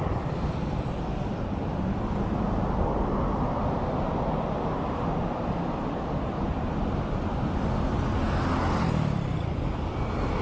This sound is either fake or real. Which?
real